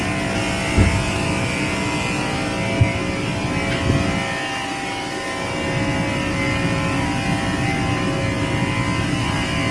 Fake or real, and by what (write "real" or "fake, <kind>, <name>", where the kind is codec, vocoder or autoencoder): real